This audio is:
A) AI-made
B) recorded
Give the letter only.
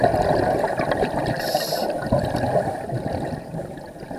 B